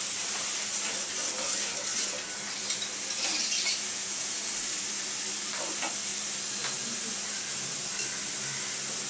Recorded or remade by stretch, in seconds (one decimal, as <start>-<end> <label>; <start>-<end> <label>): 0.0-3.9 recorded; 3.9-4.4 remade; 4.4-9.1 recorded